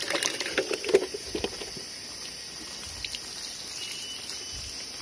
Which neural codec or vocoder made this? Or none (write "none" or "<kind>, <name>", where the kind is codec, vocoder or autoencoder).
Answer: none